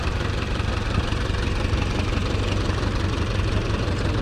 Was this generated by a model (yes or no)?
yes